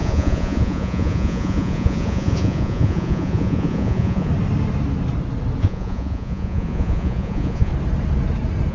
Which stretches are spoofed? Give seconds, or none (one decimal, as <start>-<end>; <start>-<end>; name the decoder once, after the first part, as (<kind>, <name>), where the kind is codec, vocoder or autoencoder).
0.0-4.3 (vocoder, Vocos); 5.6-7.7